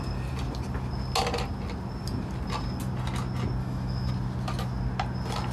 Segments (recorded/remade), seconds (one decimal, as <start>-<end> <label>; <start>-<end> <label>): 0.0-3.6 recorded; 3.6-4.1 remade; 4.1-5.5 recorded

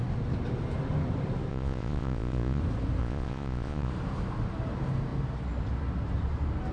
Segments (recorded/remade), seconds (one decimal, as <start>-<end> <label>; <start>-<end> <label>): 0.0-1.5 recorded; 1.5-2.6 remade; 2.6-3.0 recorded; 3.0-3.9 remade; 3.9-6.7 recorded